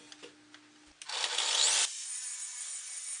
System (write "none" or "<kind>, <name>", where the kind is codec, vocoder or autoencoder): none